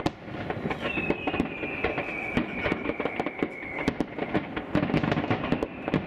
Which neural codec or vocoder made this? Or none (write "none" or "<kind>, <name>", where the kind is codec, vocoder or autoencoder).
none